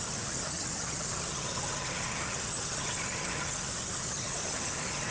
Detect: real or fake real